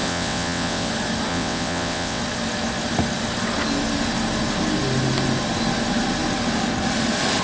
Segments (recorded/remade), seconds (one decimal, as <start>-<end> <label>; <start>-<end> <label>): 0.0-0.9 remade; 0.9-1.3 recorded; 1.3-2.2 remade; 2.2-7.4 recorded